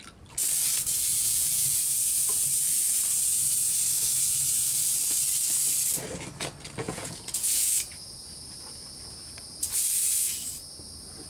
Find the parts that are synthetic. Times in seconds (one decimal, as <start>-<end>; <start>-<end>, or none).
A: 1.2-1.8; 6.8-7.9

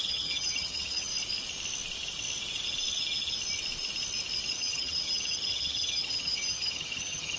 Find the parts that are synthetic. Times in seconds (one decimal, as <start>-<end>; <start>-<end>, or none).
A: 0.0-1.1; 4.5-7.4

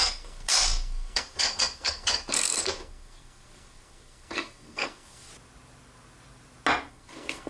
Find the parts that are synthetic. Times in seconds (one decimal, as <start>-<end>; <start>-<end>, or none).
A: 0.0-5.3; 6.9-7.5